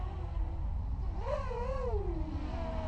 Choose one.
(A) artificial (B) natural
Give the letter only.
B